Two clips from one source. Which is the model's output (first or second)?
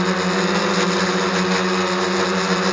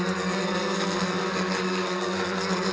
second